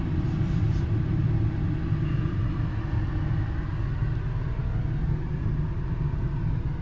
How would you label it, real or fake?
real